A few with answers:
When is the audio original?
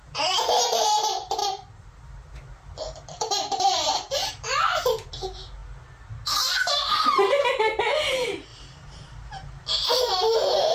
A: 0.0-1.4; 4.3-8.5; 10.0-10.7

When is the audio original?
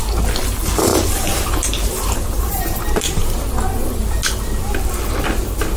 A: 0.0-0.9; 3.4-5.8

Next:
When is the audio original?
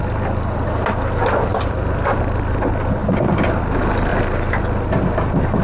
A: 0.0-5.6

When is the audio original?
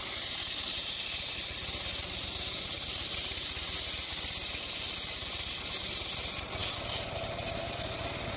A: 0.0-8.4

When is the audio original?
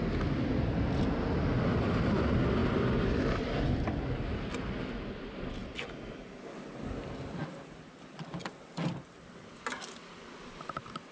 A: 0.0-7.4; 8.0-11.1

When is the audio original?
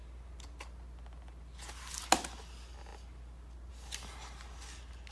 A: 0.0-5.1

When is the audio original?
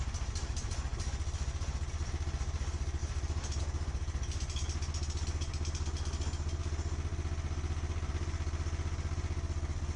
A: 0.0-3.0; 3.6-10.0